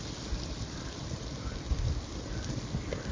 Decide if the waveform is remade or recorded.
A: recorded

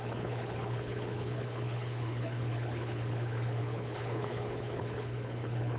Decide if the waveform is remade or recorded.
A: remade